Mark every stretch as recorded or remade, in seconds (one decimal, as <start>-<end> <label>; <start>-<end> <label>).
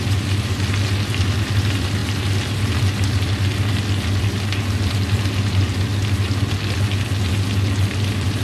0.0-8.4 recorded